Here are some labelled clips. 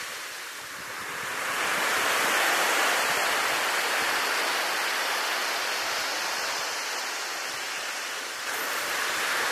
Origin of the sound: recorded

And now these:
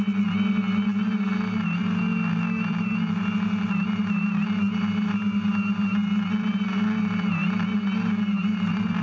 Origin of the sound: recorded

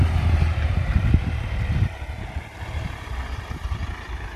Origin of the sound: remade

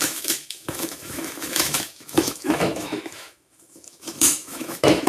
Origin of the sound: remade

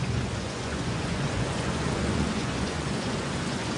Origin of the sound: remade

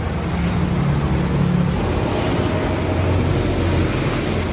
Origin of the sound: recorded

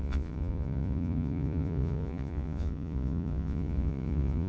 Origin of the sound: remade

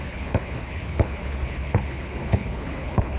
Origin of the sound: remade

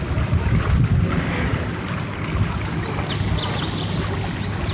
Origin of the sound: recorded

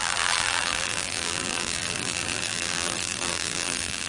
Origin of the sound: remade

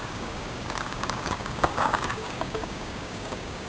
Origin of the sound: remade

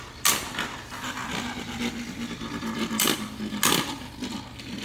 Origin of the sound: recorded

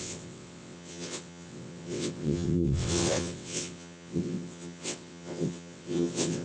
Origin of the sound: remade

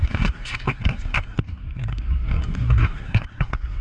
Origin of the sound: remade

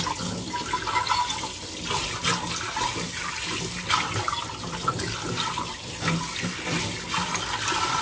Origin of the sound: recorded